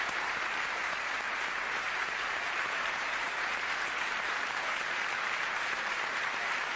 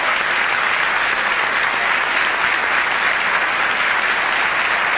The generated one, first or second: first